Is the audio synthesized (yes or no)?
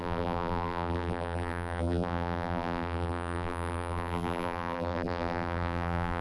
yes